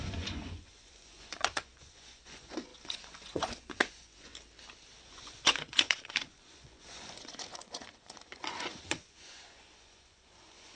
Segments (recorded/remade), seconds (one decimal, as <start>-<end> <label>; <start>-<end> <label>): 0.0-4.3 remade; 4.3-5.0 recorded; 5.0-10.8 remade